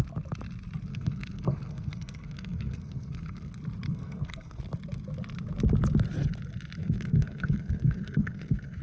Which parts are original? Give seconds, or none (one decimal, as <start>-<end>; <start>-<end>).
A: 0.0-0.9; 3.5-3.9; 4.6-6.8